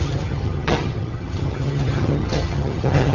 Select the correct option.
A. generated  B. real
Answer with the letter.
A